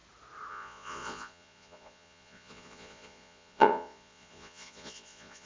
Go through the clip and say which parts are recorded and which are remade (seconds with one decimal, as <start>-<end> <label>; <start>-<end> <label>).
0.0-0.5 recorded; 0.5-5.5 remade